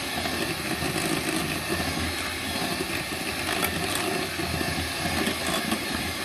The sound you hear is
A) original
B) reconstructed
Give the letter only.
A